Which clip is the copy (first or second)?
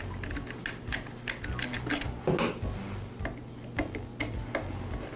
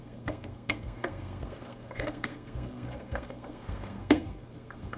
second